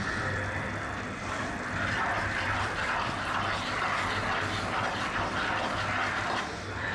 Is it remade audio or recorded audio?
recorded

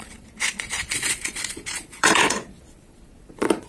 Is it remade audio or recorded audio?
remade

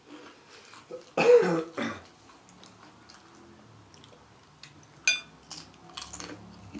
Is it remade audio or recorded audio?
recorded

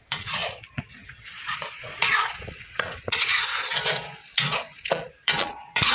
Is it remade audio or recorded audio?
remade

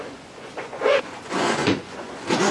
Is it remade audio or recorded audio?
remade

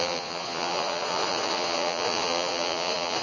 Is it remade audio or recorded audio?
remade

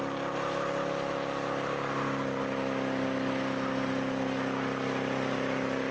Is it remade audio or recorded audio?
recorded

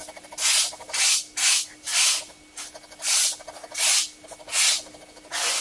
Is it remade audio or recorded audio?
recorded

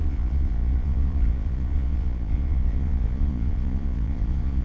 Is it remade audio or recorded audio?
remade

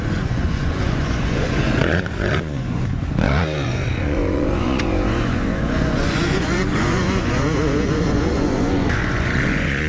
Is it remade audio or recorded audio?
remade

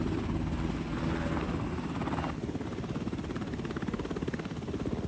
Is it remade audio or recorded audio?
recorded